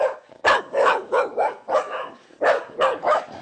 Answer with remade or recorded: remade